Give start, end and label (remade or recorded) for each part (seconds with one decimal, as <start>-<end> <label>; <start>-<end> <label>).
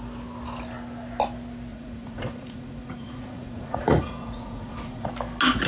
0.0-1.7 recorded; 1.7-5.1 remade; 5.1-5.7 recorded